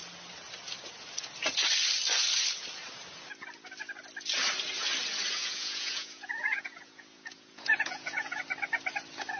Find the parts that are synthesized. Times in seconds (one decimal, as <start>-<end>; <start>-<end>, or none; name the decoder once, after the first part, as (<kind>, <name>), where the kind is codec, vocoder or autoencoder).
5.4-8.4 (vocoder, Vocos)